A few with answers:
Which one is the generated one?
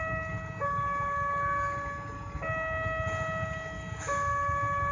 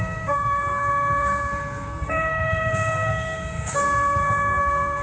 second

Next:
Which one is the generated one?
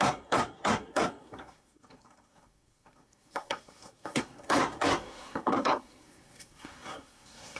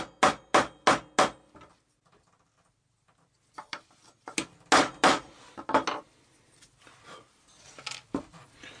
first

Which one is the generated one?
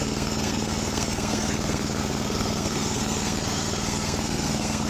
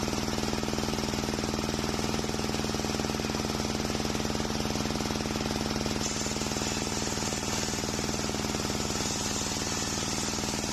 first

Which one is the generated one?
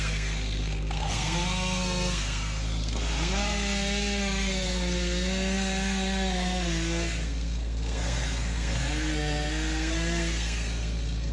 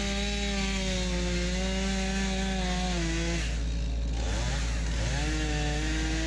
first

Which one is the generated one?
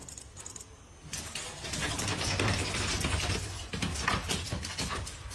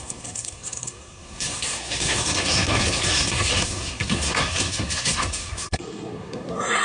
second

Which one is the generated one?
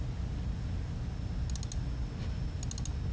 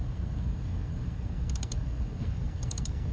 second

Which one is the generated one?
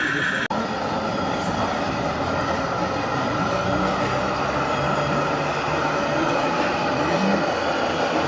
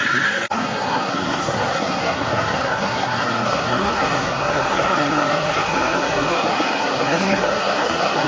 second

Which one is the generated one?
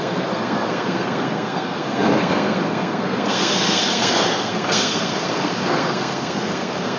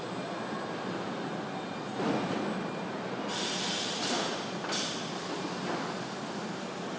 first